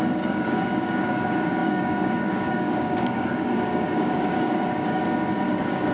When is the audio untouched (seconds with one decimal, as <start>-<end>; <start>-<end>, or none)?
5.0-5.5